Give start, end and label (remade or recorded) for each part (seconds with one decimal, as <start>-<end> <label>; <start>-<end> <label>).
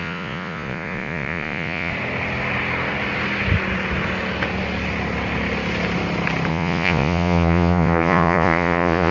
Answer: 0.0-1.9 remade; 1.9-6.5 recorded; 6.5-9.1 remade